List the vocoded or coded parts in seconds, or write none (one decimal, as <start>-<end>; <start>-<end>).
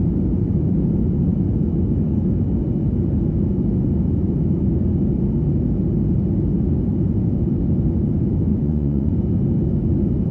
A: 8.5-9.1